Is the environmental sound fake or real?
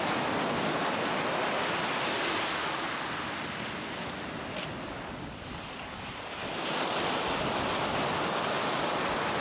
real